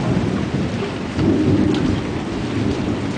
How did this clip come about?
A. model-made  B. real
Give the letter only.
B